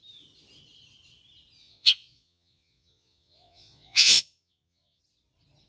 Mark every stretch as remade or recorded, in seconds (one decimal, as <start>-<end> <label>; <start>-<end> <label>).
0.0-1.6 recorded; 1.6-5.0 remade; 5.0-5.7 recorded